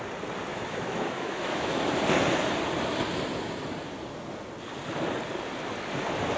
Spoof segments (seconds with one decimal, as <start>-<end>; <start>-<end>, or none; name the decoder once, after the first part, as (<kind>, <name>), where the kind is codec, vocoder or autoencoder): 0.5-1.8 (autoencoder, DAC-VAE)